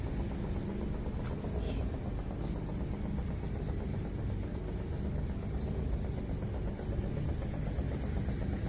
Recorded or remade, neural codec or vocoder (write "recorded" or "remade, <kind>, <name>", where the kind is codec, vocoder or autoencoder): recorded